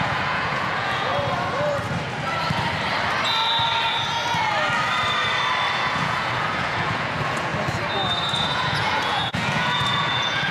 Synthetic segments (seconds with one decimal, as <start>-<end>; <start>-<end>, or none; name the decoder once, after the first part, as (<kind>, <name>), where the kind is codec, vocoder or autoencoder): 0.0-1.1 (vocoder, Vocos); 5.7-7.5; 8.3-10.5